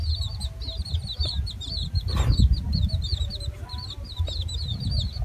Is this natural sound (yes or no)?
yes